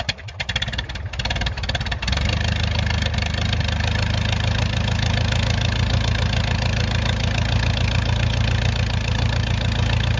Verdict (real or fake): real